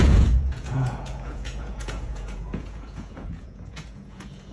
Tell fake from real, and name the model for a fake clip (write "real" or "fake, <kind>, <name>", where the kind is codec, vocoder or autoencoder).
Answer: fake, vocoder, Vocos